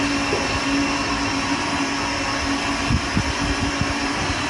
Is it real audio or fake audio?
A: real